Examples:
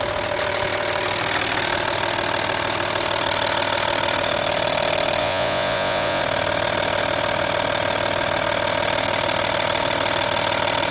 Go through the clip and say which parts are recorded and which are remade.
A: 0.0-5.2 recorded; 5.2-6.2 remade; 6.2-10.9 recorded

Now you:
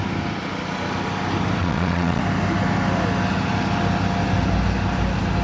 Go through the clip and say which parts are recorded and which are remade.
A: 0.0-1.6 recorded; 1.6-2.2 remade; 2.2-5.4 recorded

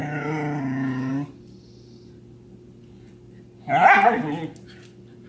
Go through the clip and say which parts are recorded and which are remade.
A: 0.0-5.3 recorded

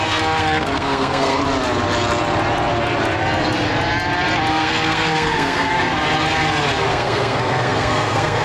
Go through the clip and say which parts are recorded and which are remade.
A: 0.0-1.4 remade; 1.4-4.5 recorded; 4.5-5.7 remade; 5.7-6.9 recorded; 6.9-8.4 remade

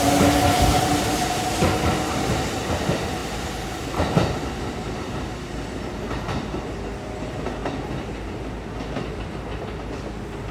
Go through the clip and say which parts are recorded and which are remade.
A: 0.0-10.5 recorded

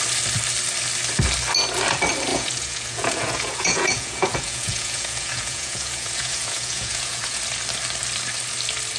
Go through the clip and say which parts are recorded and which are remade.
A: 0.0-2.3 recorded; 2.3-7.4 remade; 7.4-9.0 recorded

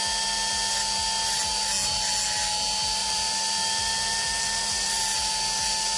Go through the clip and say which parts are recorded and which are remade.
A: 0.0-3.0 recorded; 3.0-5.3 remade; 5.3-6.0 recorded